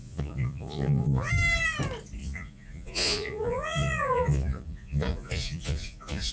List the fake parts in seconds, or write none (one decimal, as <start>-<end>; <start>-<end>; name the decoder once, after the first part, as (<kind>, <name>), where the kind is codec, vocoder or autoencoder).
0.0-1.3 (vocoder, Vocos); 2.2-6.3